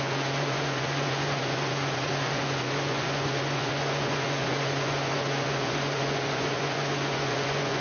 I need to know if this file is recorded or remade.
remade